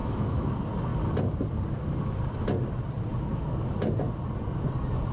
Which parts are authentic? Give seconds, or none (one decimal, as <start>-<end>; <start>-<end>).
0.5-5.1